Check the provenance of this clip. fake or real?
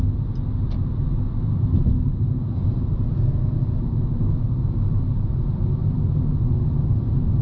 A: real